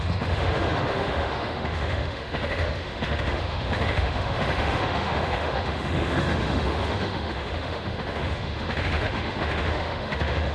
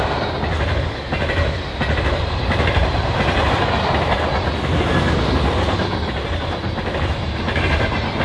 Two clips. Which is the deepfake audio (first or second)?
first